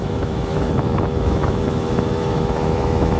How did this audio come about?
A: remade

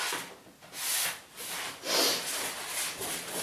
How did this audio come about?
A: recorded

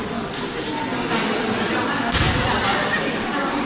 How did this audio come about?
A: recorded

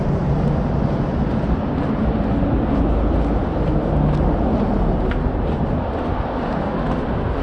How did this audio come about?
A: recorded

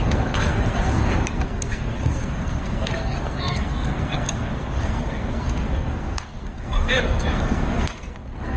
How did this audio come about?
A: remade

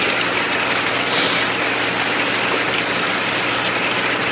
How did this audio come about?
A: recorded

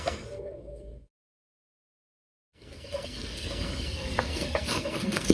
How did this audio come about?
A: remade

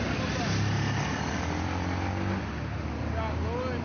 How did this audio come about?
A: recorded